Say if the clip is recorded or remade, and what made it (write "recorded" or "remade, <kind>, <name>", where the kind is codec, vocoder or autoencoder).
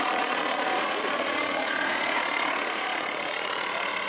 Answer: remade, vocoder, Vocos